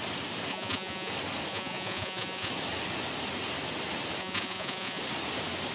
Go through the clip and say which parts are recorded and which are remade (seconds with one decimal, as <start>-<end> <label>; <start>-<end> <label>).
0.0-0.5 recorded; 0.5-1.1 remade; 1.1-1.5 recorded; 1.5-2.5 remade; 2.5-4.2 recorded; 4.2-5.0 remade; 5.0-5.7 recorded

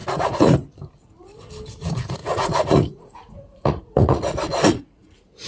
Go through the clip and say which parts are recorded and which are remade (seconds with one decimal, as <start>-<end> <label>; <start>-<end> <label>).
0.0-0.5 remade; 0.5-2.2 recorded; 2.2-5.5 remade